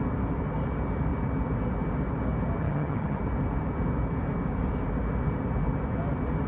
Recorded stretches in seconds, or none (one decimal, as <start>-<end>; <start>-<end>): 0.0-2.6; 3.2-6.5